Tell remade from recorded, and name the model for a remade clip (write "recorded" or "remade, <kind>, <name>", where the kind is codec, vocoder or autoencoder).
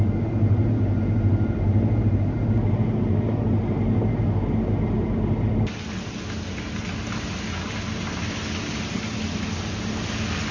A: recorded